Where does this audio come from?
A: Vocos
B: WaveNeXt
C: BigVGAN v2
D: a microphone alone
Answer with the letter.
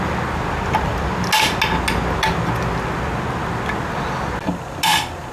D